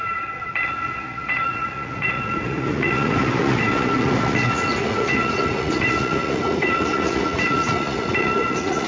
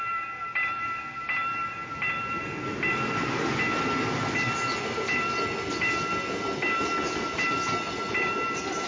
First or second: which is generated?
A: first